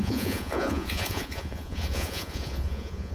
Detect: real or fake fake